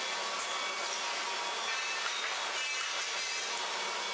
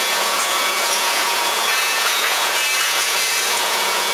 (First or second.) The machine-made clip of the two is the second